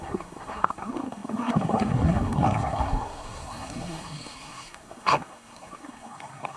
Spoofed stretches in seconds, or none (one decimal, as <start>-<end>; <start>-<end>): 0.0-6.6